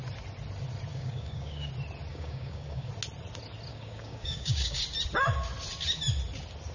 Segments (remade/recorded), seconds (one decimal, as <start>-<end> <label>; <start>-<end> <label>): 0.0-0.9 recorded; 0.9-1.7 remade; 1.7-2.1 recorded; 2.1-2.9 remade; 2.9-3.7 recorded; 3.7-4.8 remade; 4.8-6.7 recorded